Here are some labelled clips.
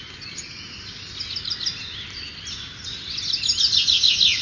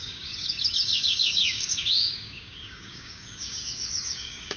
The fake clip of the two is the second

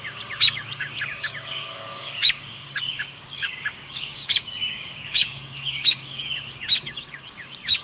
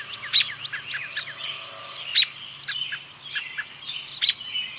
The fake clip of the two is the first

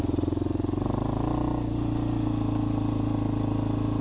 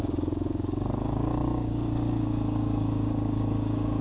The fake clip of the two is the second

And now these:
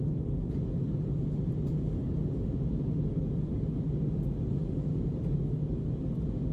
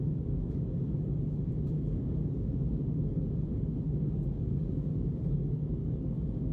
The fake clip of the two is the second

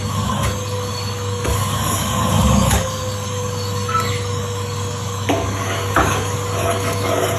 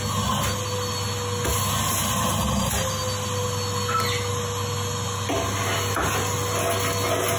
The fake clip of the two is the first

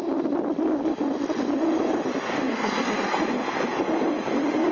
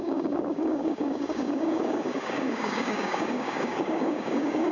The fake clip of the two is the second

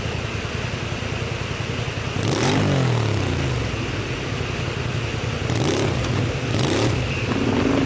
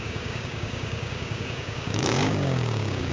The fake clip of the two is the second